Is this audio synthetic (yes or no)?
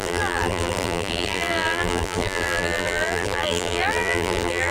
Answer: yes